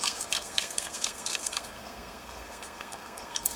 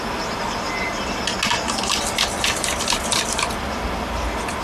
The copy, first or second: first